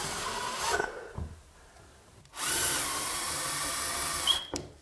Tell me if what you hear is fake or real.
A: fake